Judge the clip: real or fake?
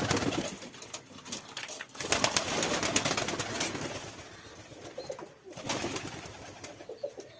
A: real